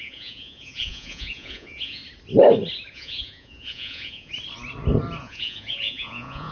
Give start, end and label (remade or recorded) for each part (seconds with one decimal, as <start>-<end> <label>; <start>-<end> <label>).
0.0-2.0 remade; 2.0-2.9 recorded; 2.9-4.3 remade; 4.3-5.2 recorded; 5.2-6.5 remade